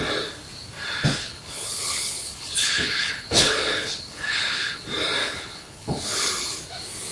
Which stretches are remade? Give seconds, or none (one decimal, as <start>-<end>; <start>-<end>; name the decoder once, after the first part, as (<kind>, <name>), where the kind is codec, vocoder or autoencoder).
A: 1.2-4.8 (codec, HILCodec); 5.2-6.6